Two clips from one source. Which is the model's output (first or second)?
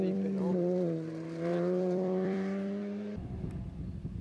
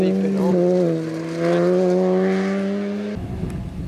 first